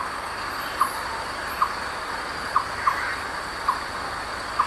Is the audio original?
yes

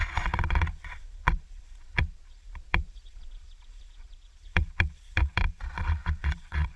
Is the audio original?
no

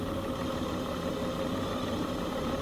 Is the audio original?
yes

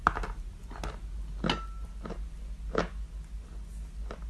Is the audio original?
yes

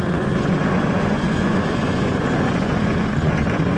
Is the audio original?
no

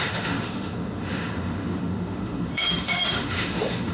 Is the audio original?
no